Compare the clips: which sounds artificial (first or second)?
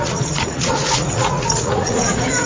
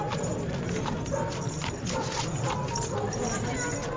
first